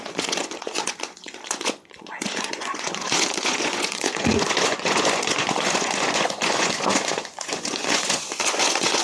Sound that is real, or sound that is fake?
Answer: fake